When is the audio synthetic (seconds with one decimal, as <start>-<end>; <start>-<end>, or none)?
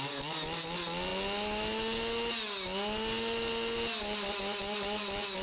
none